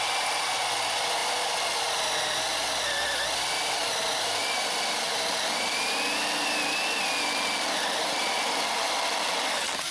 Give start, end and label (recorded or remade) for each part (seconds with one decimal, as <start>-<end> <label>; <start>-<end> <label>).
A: 0.0-9.9 recorded